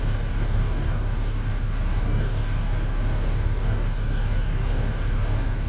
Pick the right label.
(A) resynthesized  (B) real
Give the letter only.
A